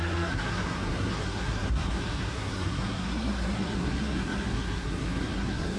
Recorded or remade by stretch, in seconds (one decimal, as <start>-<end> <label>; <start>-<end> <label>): 0.0-5.8 remade